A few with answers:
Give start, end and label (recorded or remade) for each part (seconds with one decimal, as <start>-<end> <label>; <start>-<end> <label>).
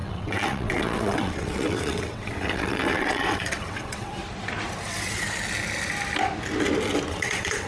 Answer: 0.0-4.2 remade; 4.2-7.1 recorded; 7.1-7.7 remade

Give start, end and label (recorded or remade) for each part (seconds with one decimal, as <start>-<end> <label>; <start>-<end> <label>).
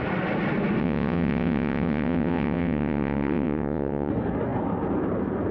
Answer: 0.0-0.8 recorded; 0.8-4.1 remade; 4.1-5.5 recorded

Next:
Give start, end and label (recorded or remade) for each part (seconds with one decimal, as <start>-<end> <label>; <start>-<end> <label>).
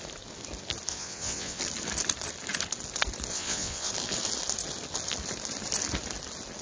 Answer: 0.0-0.9 recorded; 0.9-1.6 remade; 1.6-3.3 recorded; 3.3-3.9 remade; 3.9-6.6 recorded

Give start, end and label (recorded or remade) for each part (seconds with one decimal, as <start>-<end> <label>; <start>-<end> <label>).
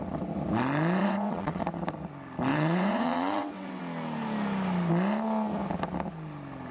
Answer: 0.0-1.0 recorded; 1.0-1.6 remade; 1.6-2.5 recorded; 2.5-3.8 remade; 3.8-6.7 recorded